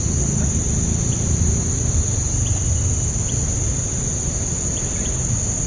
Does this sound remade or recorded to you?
recorded